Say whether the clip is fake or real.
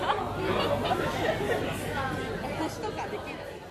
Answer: real